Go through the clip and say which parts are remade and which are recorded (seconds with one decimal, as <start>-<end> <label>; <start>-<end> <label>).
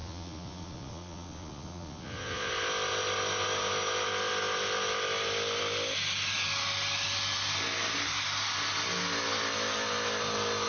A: 0.0-2.5 remade; 2.5-10.7 recorded